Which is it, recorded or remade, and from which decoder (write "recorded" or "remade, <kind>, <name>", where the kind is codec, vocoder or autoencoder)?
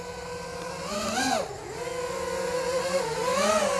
recorded